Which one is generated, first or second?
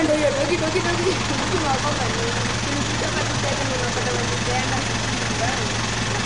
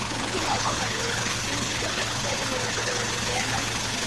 second